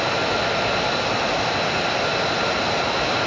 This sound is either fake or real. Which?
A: real